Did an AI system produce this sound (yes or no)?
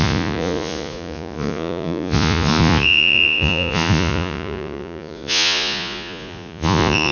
yes